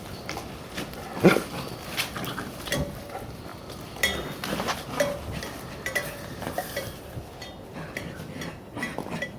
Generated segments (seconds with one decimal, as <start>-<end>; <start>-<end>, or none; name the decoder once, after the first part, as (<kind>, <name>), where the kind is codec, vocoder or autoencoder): none